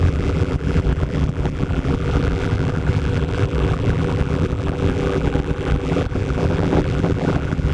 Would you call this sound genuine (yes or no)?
no